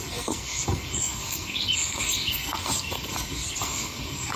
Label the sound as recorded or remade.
remade